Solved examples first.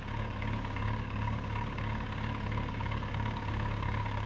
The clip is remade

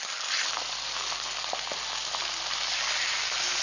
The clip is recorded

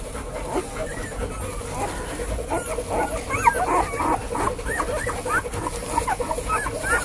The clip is recorded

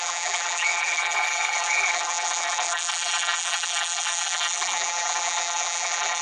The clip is remade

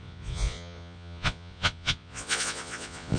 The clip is remade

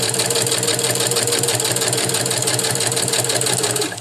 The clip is recorded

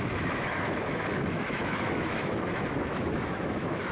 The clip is remade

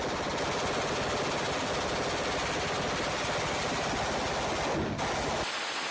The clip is recorded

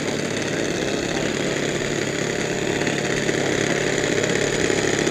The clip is recorded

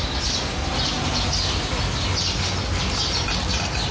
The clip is recorded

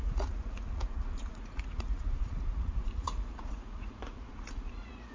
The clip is remade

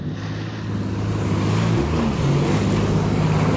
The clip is recorded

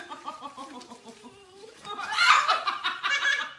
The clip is remade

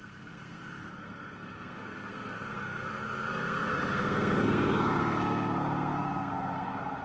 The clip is remade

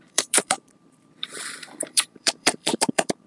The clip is remade